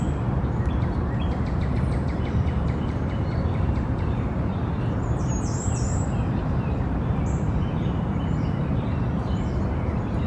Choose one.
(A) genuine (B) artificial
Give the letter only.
B